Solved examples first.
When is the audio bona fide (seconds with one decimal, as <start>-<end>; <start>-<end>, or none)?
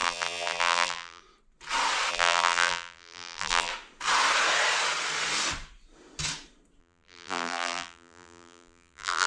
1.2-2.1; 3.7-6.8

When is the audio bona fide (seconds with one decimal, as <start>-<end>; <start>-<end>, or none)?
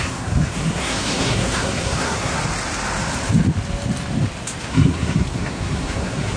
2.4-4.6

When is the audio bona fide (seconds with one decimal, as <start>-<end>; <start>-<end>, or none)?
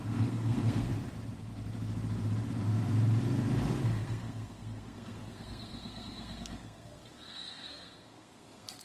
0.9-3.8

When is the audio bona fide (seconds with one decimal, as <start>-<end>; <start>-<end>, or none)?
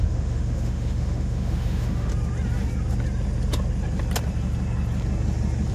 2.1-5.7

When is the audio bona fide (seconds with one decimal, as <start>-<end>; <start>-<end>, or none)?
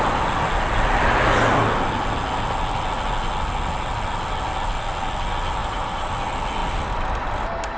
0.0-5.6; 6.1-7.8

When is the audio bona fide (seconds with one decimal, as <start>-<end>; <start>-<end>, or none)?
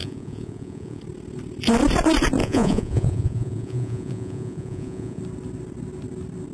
1.0-2.4; 5.2-6.5